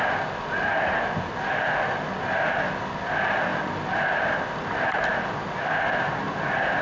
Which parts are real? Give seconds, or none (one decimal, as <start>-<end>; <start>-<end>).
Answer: 0.0-6.8